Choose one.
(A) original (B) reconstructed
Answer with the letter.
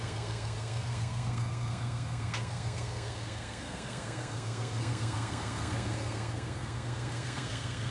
B